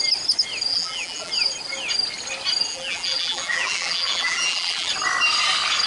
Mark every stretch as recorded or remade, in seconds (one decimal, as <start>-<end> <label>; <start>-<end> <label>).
0.0-0.7 recorded; 0.7-1.3 remade; 1.3-2.7 recorded; 2.7-4.9 remade; 4.9-5.9 recorded